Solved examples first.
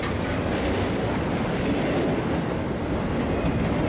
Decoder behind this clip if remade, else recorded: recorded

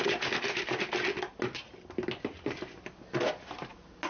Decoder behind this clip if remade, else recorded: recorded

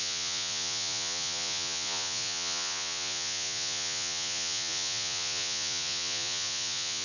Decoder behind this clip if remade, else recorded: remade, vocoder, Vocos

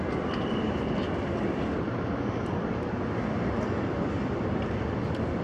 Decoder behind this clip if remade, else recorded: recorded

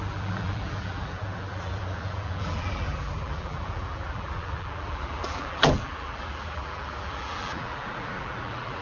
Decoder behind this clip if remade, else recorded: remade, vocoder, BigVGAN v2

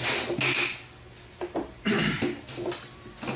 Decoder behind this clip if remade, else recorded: recorded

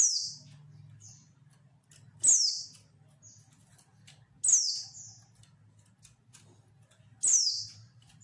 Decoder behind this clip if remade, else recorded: recorded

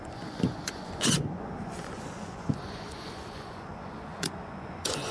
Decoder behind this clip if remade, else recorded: remade, vocoder, Vocos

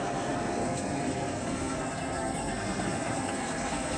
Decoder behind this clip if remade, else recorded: remade, codec, SNAC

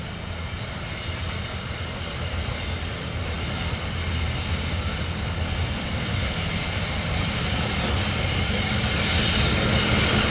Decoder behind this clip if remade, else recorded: recorded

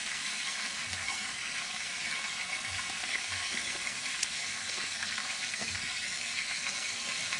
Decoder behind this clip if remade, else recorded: remade, codec, SNAC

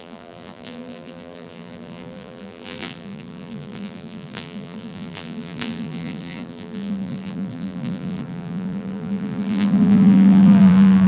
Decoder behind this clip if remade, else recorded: remade, vocoder, BigVGAN v2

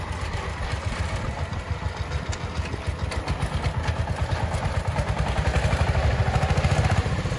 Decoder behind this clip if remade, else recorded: recorded